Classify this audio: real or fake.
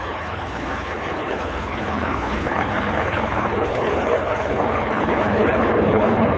fake